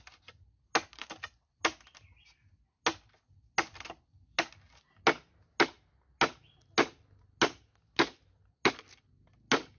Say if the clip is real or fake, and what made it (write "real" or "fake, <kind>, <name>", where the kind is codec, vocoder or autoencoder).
real